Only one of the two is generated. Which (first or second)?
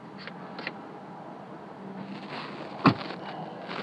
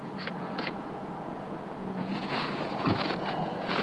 second